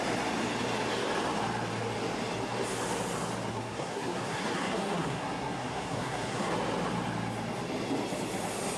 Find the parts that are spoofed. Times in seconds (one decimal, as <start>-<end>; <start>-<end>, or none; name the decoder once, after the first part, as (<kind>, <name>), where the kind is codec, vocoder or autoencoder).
3.5-6.5 (codec, SNAC)